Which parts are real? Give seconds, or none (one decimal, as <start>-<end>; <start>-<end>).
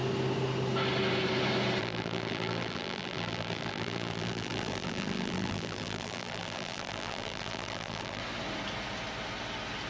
0.0-1.8; 8.2-9.9